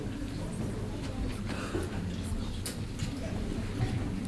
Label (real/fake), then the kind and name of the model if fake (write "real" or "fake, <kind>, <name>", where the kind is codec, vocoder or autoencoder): real